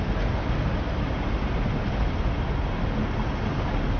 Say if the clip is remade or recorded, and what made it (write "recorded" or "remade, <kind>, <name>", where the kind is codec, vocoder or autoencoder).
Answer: recorded